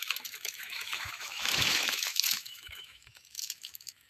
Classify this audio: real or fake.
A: fake